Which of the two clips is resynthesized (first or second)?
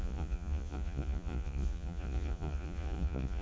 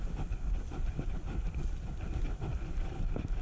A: first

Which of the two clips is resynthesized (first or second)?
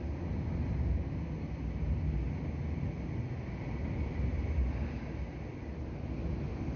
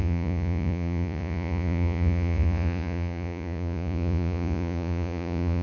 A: second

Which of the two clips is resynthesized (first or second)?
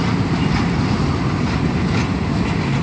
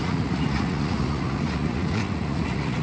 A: second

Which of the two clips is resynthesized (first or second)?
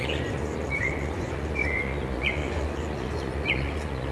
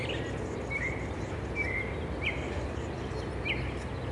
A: first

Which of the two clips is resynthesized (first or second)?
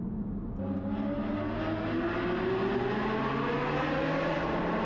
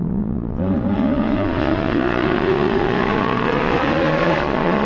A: second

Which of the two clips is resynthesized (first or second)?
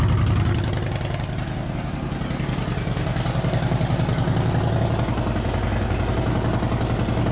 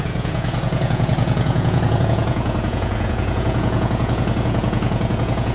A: second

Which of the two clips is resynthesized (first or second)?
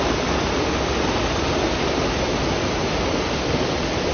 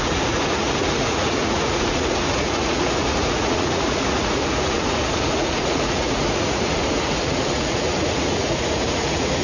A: second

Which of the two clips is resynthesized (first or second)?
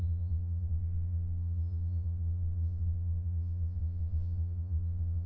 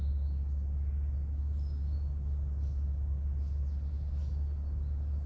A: first